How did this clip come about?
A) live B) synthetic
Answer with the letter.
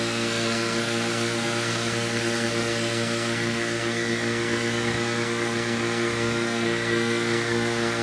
B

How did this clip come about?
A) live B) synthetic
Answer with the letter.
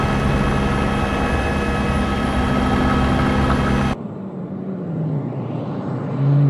A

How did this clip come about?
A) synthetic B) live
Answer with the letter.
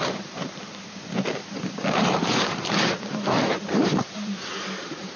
A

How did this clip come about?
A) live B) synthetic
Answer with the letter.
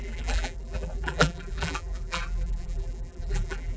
B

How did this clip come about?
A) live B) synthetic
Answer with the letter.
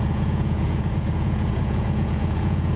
B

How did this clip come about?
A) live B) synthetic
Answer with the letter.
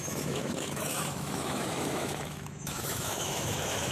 B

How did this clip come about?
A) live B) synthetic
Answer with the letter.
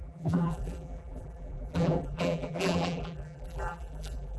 B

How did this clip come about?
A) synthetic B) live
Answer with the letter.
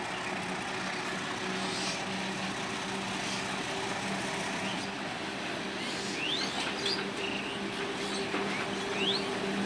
B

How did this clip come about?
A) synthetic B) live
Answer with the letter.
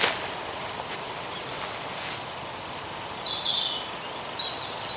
B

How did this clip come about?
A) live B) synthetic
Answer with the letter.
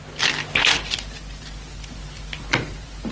A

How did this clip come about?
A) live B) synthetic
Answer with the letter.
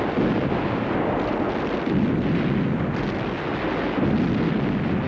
A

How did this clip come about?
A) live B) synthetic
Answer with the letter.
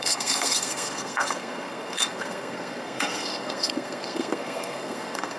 B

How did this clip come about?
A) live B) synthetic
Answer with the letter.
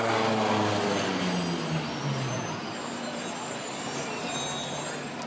A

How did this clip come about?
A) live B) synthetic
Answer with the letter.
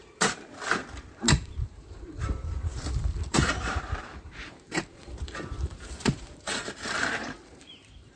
B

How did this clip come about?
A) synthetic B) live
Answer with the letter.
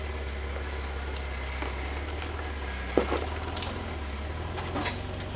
B